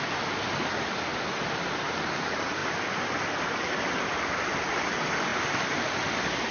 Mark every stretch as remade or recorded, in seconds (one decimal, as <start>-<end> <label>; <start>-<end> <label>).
0.0-1.1 recorded; 1.1-2.1 remade; 2.1-2.6 recorded; 2.6-4.4 remade; 4.4-6.5 recorded